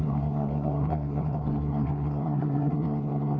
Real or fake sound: fake